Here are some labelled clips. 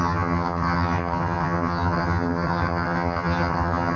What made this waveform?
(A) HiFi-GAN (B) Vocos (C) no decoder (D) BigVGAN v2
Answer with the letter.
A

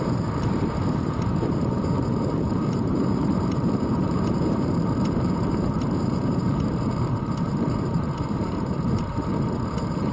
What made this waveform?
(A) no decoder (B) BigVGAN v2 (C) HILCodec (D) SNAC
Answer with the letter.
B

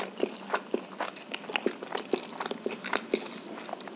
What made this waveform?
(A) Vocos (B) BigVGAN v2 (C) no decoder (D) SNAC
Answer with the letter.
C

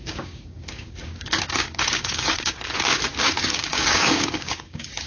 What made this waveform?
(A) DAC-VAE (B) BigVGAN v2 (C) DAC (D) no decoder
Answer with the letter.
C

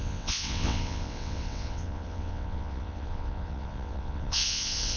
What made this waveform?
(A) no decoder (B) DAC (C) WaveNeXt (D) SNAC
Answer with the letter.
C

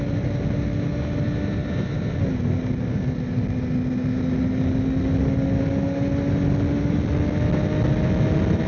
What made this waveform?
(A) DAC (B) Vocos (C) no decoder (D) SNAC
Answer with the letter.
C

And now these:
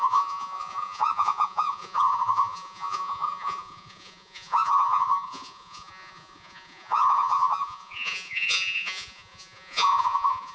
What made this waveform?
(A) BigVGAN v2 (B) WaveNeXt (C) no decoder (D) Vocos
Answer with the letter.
D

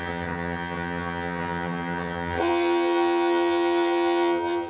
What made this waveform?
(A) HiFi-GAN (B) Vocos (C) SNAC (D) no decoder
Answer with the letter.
A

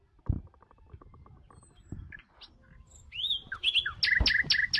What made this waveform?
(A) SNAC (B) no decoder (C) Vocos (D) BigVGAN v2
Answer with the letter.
B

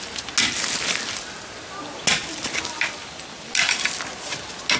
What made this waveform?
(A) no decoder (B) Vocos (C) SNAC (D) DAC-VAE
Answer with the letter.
A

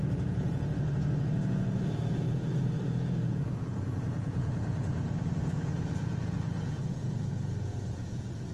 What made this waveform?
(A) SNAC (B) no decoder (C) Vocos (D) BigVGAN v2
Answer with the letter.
C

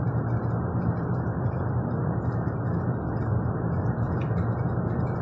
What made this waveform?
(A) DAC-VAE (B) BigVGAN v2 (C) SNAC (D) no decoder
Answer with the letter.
B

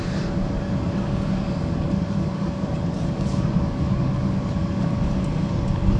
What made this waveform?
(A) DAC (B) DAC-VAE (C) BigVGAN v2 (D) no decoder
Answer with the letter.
A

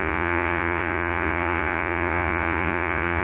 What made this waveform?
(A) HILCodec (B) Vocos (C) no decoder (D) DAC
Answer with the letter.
B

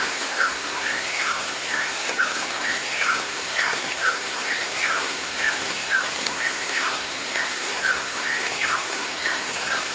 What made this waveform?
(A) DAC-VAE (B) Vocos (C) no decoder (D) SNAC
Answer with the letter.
D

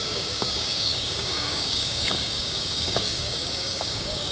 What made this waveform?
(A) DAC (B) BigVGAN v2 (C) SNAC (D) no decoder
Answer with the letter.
A